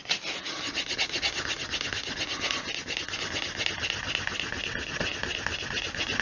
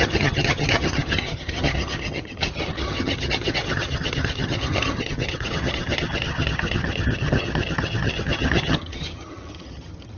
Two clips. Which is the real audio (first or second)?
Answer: first